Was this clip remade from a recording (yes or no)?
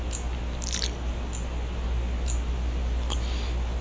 no